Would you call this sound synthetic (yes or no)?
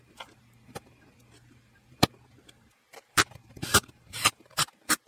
yes